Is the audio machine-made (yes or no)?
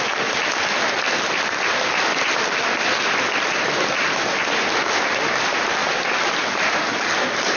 yes